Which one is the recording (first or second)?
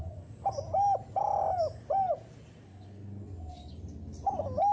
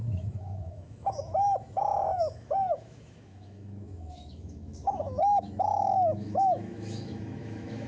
first